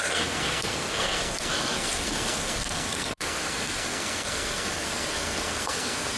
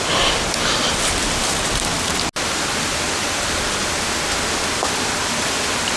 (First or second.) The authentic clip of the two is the second